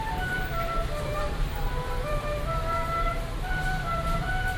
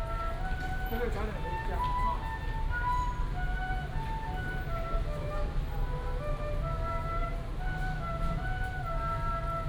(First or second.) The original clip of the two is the second